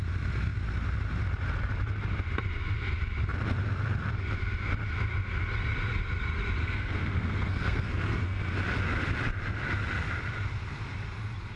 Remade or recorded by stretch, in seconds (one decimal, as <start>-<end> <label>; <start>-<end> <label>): 0.0-6.6 recorded; 6.6-8.5 remade; 8.5-11.6 recorded